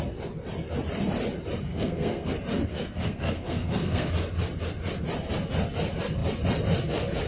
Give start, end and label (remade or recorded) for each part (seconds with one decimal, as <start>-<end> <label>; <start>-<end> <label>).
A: 0.0-1.7 recorded; 1.7-2.3 remade; 2.3-2.7 recorded; 2.7-4.1 remade; 4.1-7.3 recorded